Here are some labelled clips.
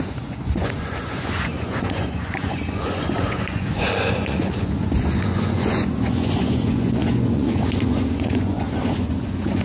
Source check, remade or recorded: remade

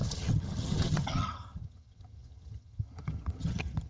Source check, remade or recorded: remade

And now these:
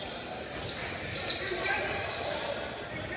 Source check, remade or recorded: recorded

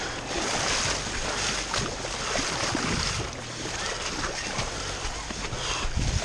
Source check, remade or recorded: recorded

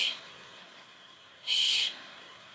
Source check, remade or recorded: remade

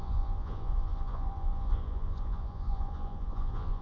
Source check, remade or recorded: remade